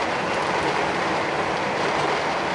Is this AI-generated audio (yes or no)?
no